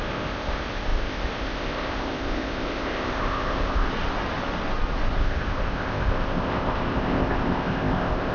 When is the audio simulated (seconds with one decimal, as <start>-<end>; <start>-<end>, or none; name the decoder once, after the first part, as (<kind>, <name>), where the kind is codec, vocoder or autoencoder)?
0.0-3.9 (codec, ZipCodec); 5.2-8.3